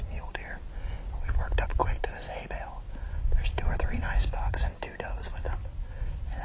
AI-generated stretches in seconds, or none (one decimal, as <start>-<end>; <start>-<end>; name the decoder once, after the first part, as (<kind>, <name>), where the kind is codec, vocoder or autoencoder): none